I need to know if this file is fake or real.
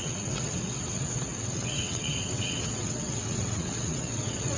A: fake